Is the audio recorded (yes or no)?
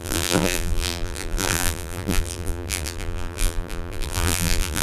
no